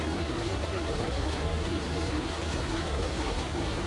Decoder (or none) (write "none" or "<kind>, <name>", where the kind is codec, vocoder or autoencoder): codec, SNAC